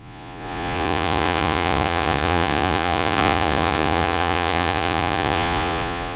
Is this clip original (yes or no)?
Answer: no